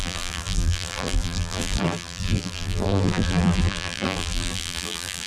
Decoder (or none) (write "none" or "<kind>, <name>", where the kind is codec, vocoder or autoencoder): vocoder, BigVGAN v2